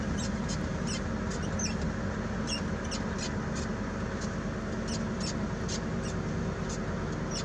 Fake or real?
real